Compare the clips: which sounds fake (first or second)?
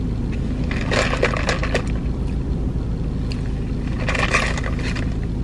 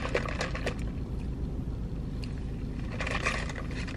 second